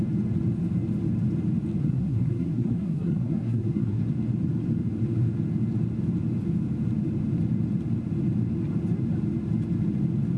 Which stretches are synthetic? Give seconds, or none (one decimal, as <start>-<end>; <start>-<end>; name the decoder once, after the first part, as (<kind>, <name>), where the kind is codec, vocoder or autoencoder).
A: 1.8-4.0 (codec, SNAC)